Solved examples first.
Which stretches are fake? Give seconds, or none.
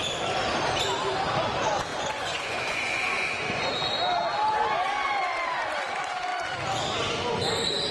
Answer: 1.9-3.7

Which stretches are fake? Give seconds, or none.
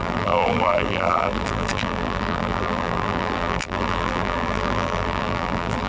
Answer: 0.0-5.9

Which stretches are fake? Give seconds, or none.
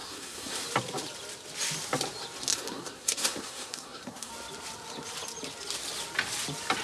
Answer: 0.0-0.6; 2.5-4.3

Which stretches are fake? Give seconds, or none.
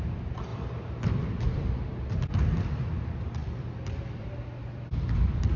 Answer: 0.5-1.1